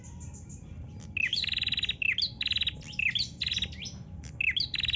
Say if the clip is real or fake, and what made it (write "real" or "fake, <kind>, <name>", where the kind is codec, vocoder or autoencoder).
real